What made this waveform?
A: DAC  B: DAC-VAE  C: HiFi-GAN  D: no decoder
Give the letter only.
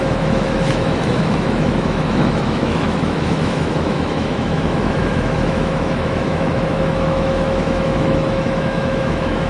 B